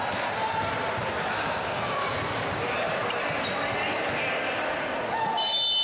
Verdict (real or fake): real